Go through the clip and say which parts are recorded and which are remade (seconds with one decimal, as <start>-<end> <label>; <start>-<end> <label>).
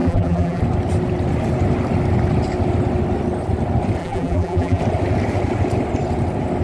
0.0-0.6 remade; 0.6-4.0 recorded; 4.0-4.8 remade; 4.8-6.6 recorded